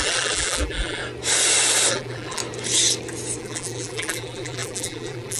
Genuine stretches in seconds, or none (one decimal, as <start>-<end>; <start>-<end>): 1.0-1.9; 2.4-3.4